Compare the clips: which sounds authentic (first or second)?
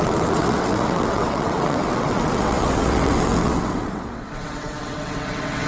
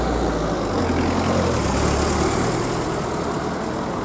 second